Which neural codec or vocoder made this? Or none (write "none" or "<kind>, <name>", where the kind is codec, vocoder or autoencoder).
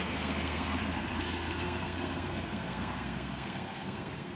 codec, SNAC